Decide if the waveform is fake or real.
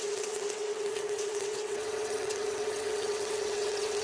fake